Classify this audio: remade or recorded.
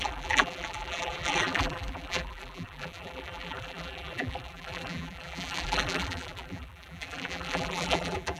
remade